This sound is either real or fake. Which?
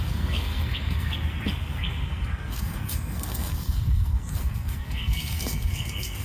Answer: fake